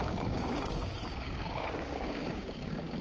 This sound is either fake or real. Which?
fake